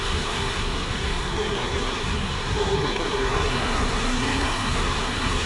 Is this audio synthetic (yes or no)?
yes